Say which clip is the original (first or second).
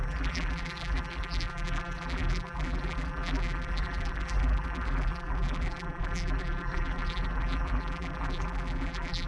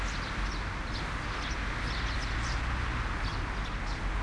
second